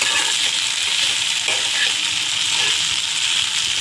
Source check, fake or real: real